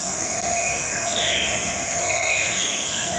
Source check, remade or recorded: remade